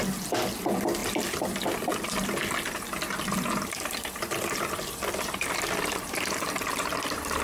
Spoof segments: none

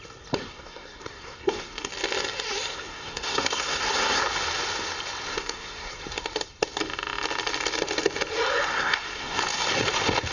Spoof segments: 0.4-1.9 (codec, SNAC); 2.7-4.2; 5.3-6.0; 8.7-9.4